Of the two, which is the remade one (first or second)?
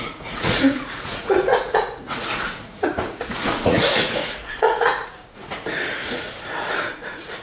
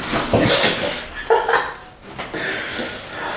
first